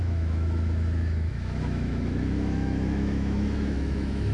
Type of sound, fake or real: fake